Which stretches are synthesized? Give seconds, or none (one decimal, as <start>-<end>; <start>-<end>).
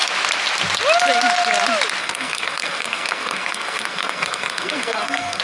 2.0-5.4